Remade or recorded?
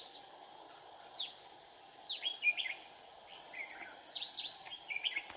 recorded